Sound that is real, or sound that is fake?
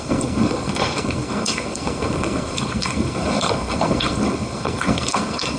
fake